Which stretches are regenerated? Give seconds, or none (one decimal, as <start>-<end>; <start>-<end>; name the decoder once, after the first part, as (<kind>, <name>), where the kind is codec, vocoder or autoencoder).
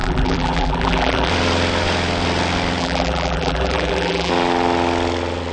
0.0-1.3 (vocoder, BigVGAN v2); 2.8-4.3